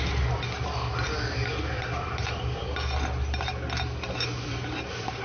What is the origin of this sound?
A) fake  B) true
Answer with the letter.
B